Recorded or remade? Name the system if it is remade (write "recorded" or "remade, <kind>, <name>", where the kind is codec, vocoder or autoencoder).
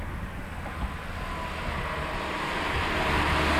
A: recorded